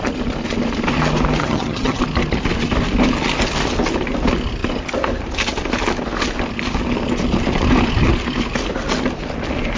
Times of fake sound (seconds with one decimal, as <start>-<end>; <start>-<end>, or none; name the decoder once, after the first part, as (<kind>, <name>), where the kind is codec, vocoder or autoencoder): 1.4-2.0 (vocoder, HiFi-GAN)